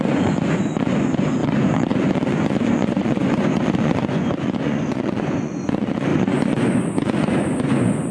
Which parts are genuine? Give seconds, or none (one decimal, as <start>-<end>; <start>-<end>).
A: none

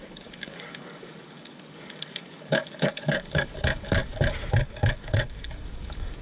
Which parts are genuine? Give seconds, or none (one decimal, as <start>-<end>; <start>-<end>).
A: 4.1-4.7

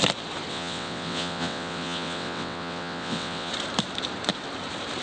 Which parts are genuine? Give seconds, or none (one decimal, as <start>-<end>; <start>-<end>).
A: 0.0-0.5; 3.5-5.0

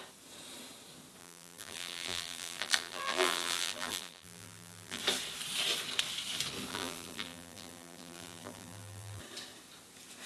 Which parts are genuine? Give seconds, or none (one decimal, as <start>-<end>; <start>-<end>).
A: 0.0-1.2; 5.0-6.7; 9.2-10.3

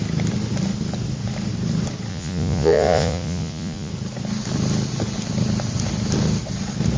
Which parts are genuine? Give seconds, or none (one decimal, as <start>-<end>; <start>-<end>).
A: 0.0-2.1; 3.9-7.0

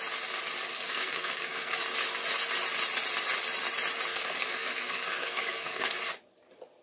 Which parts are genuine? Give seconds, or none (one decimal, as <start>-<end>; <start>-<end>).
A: 0.0-0.7; 1.8-4.1; 6.0-6.8

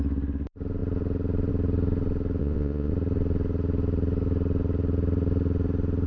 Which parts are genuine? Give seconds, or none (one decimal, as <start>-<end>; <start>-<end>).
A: 0.0-2.4; 2.9-6.1